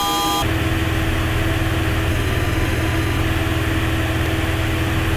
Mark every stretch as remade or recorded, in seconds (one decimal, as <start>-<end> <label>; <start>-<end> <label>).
0.0-2.1 recorded; 2.1-3.2 remade; 3.2-5.2 recorded